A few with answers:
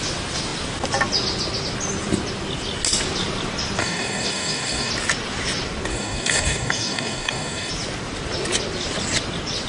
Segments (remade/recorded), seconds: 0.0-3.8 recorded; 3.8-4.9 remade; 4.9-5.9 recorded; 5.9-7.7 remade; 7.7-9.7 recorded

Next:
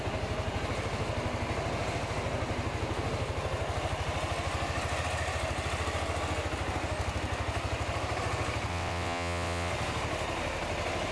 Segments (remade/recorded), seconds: 0.0-8.7 recorded; 8.7-9.7 remade; 9.7-11.1 recorded

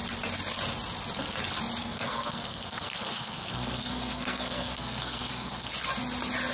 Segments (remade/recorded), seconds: 0.0-1.8 recorded; 1.8-5.7 remade; 5.7-6.5 recorded

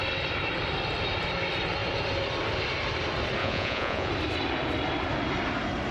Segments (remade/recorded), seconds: 0.0-3.4 recorded; 3.4-4.1 remade; 4.1-5.9 recorded

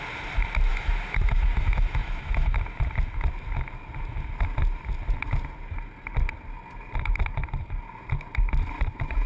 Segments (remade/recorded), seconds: 0.0-0.7 recorded; 0.7-2.6 remade; 2.6-9.3 recorded

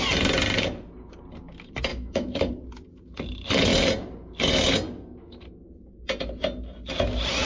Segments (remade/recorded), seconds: 0.0-1.9 recorded; 1.9-2.5 remade; 2.5-7.5 recorded

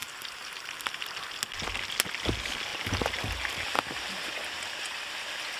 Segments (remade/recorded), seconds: 0.0-1.0 remade; 1.0-2.7 recorded; 2.7-4.6 remade; 4.6-5.6 recorded

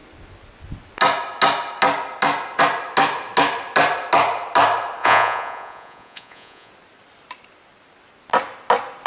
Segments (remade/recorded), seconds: 0.0-5.0 recorded; 5.0-6.7 remade; 6.7-9.1 recorded